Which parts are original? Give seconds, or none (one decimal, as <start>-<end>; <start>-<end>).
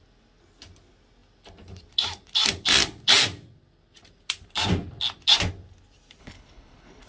0.0-6.2